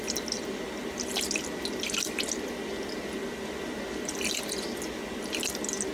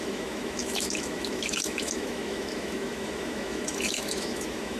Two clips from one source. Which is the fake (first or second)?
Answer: second